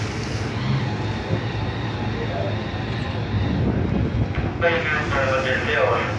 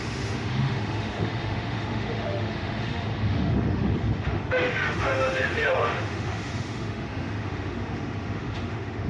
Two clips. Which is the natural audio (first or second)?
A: first